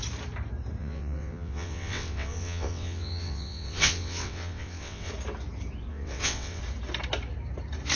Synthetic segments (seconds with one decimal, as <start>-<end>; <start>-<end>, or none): 0.8-5.1; 5.9-6.6